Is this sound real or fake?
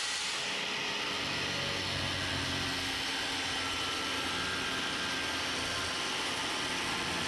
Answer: real